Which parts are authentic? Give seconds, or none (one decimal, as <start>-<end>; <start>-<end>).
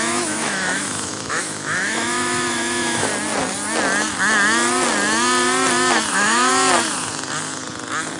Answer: 3.1-6.1; 6.5-8.2